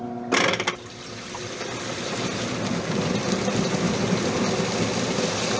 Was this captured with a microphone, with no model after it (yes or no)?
yes